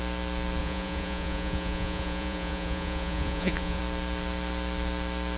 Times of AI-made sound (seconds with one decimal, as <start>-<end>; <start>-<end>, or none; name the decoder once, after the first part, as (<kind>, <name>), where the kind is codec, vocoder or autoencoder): 0.6-3.8 (vocoder, Vocos)